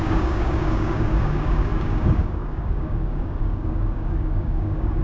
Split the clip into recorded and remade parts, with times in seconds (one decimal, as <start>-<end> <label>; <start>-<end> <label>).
0.0-5.0 remade